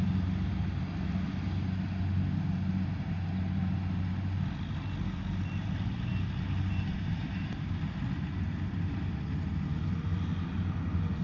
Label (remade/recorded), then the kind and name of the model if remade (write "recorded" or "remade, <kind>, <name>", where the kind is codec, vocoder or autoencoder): recorded